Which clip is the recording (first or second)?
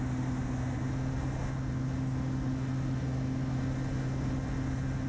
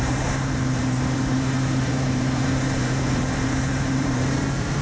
first